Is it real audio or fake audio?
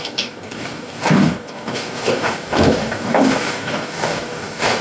fake